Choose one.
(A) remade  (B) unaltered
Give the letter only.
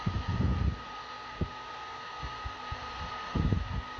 B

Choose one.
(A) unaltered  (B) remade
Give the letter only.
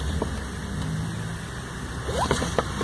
A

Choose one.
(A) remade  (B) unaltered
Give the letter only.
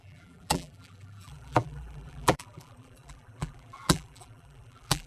A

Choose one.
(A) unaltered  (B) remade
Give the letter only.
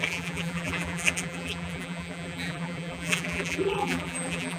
B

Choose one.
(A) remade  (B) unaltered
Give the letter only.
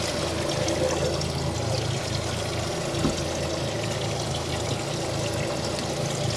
B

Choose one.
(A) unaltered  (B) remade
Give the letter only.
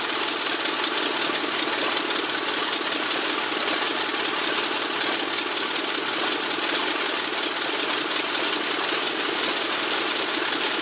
A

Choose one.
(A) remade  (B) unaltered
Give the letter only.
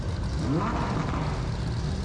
B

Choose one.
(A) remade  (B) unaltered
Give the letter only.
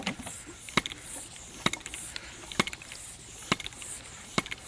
B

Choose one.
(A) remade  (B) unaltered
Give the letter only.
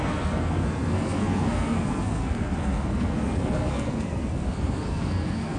A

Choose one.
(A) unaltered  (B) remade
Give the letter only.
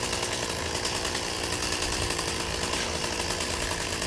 A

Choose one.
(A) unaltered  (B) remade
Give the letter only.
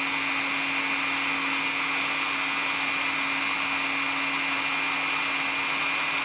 A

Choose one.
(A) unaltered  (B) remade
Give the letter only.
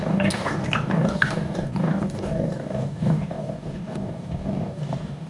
B